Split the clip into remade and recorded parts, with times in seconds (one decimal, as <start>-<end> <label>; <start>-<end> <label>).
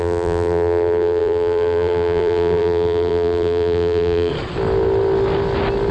0.0-4.3 remade; 4.3-5.9 recorded